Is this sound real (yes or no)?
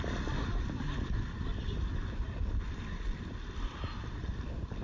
yes